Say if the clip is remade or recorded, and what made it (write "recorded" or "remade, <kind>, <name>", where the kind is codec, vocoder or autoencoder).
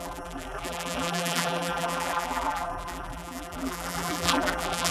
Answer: remade, vocoder, BigVGAN v2